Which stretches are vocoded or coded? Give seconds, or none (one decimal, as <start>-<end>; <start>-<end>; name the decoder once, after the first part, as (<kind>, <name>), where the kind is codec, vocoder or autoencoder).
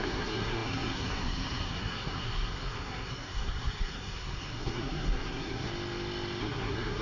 0.0-5.7 (codec, SNAC); 6.4-7.0